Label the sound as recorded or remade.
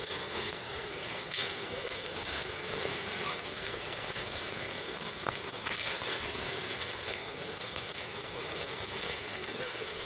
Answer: remade